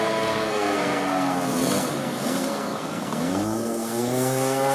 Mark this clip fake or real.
fake